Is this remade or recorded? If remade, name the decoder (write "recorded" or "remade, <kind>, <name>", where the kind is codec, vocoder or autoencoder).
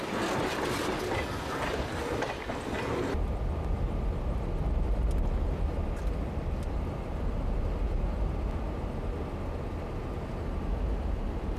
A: recorded